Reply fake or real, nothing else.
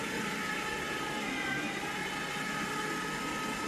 real